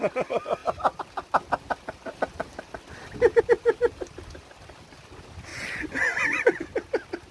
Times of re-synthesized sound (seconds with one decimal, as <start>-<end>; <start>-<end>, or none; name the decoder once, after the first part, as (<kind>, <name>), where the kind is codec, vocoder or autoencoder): 5.5-6.6 (vocoder, Vocos)